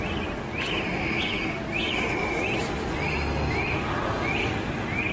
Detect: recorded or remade recorded